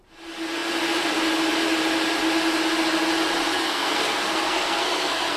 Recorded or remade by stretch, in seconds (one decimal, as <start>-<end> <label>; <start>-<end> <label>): 0.0-3.5 recorded; 3.5-5.4 remade